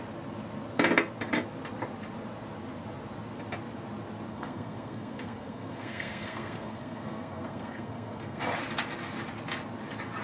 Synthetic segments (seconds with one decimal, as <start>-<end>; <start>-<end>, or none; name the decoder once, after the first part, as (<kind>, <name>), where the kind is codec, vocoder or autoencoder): 4.3-8.4 (codec, SNAC)